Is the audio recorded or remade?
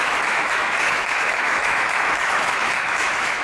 remade